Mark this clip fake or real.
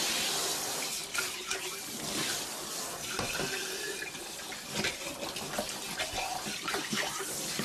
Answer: real